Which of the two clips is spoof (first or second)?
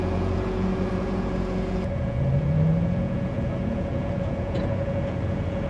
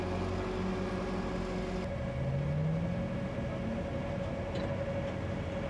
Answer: first